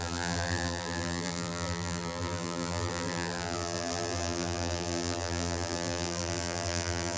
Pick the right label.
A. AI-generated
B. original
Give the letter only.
A